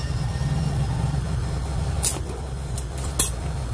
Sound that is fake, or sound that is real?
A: real